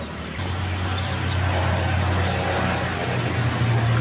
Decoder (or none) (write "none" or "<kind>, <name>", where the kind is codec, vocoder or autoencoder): none